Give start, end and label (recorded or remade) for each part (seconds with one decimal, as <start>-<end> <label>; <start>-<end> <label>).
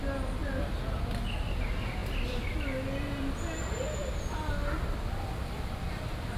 0.0-6.4 recorded